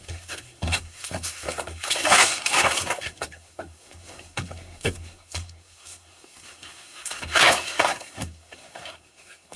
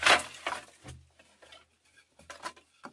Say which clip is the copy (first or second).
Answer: first